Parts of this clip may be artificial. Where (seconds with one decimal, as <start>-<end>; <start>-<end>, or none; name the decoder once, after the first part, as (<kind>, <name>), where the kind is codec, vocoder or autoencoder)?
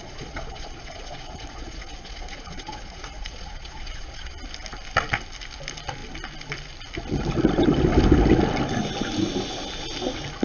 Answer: 0.0-4.4 (vocoder, Vocos)